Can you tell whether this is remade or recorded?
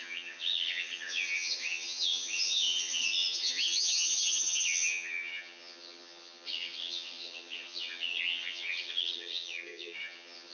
remade